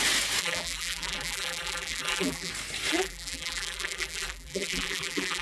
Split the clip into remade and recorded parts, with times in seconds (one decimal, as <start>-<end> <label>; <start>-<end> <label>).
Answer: 0.0-0.4 recorded; 0.4-2.5 remade; 2.5-2.9 recorded; 2.9-5.4 remade